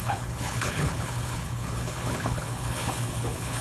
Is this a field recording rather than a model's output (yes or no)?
no